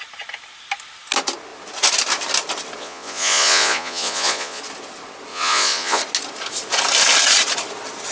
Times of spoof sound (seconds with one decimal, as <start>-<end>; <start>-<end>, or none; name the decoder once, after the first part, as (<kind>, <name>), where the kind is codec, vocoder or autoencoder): 2.8-4.6 (vocoder, Vocos); 5.3-6.0